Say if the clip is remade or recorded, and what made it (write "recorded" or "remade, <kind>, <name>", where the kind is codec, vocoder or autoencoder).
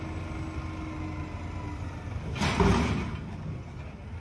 recorded